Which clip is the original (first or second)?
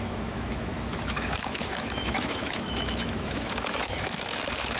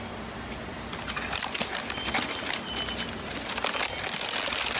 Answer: second